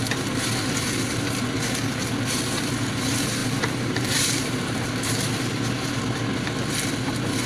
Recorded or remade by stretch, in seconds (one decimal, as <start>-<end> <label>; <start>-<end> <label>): 0.0-3.4 recorded; 3.4-6.0 remade; 6.0-7.5 recorded

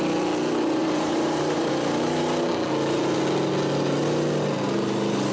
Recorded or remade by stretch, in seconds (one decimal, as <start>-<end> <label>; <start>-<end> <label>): 0.0-0.8 recorded; 0.8-1.7 remade; 1.7-5.3 recorded